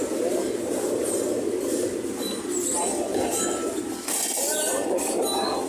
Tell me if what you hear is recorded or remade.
remade